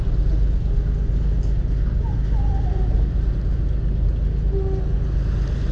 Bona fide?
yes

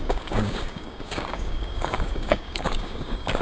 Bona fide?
no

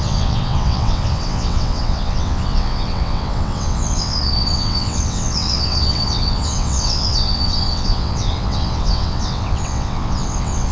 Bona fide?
no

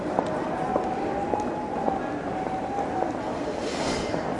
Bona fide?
yes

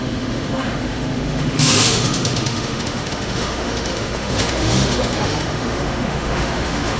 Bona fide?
no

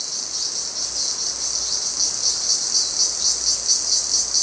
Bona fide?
yes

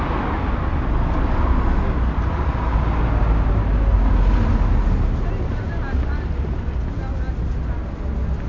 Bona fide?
yes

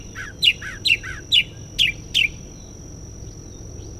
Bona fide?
yes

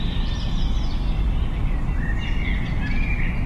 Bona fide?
no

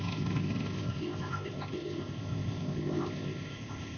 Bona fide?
no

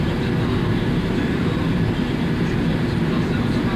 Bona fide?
yes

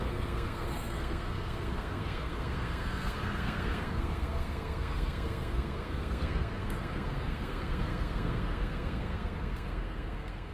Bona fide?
no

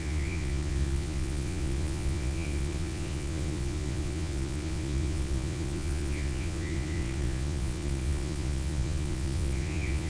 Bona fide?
no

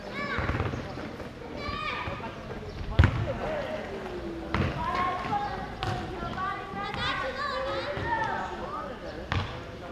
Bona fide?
yes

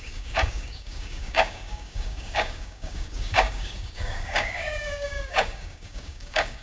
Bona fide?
no